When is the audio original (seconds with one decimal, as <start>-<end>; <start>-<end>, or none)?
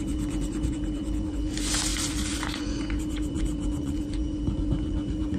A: none